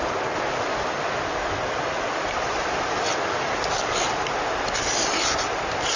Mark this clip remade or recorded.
recorded